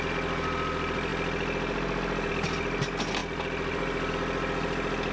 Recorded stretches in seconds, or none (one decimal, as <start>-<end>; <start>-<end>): 0.0-5.1